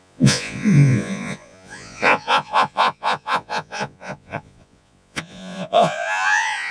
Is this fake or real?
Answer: fake